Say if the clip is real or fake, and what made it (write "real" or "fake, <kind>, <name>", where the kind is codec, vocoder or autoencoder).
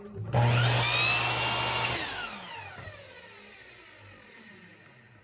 real